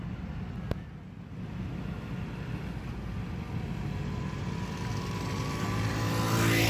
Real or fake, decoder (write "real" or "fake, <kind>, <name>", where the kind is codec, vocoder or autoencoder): real